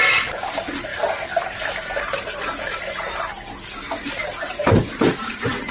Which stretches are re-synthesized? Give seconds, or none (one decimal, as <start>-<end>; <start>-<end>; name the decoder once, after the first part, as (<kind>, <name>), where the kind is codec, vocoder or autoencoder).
4.2-5.7 (vocoder, BigVGAN v2)